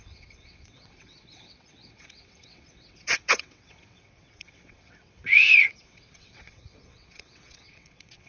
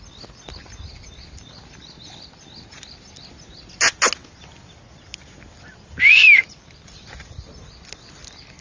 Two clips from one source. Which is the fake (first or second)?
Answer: first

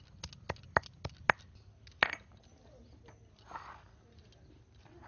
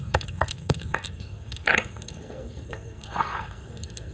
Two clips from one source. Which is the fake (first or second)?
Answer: second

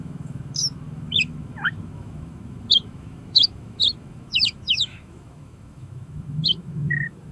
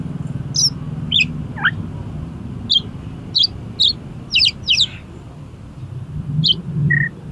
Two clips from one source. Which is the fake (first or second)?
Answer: first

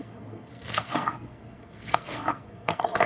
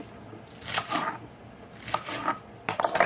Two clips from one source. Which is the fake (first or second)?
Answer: first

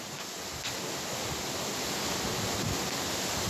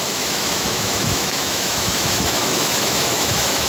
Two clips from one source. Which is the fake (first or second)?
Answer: second